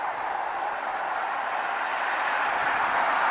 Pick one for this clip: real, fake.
fake